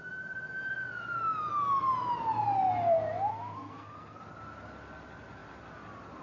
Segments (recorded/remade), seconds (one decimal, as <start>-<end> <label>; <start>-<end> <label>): 0.0-3.3 recorded; 3.3-4.2 remade; 4.2-6.2 recorded